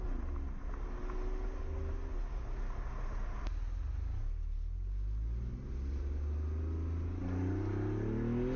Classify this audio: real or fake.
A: real